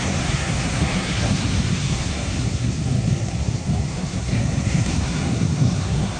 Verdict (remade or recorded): remade